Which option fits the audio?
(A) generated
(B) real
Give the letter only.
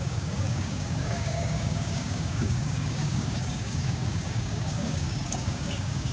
A